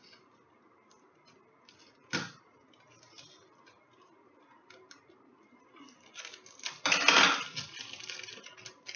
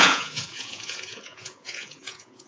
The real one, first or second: first